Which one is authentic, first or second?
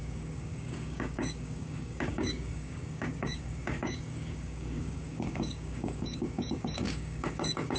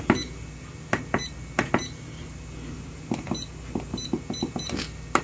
second